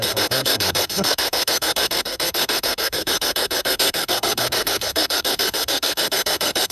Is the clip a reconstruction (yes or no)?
yes